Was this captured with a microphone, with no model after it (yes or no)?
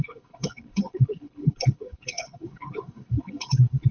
no